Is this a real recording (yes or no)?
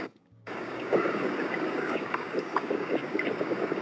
no